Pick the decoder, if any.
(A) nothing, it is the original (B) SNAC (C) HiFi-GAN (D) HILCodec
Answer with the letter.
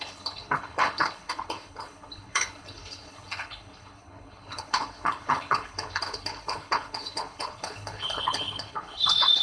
D